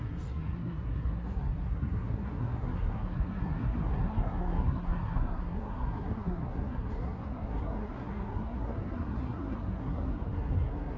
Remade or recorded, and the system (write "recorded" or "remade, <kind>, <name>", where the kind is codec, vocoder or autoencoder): remade, codec, SNAC